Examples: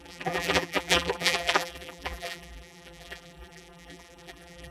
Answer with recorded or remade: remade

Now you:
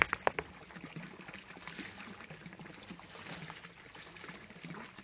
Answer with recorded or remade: recorded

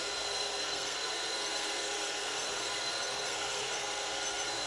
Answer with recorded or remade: remade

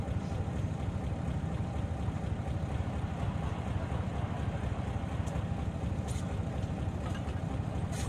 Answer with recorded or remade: remade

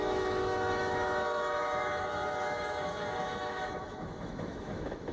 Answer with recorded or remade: remade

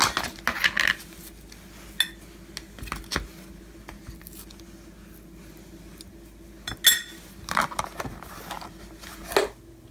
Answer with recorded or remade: recorded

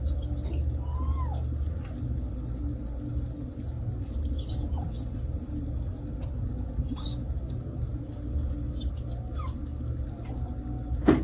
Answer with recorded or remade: recorded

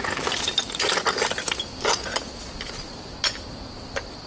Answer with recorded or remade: recorded